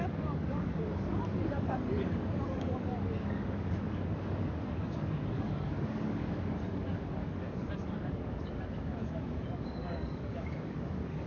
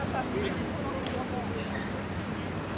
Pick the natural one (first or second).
second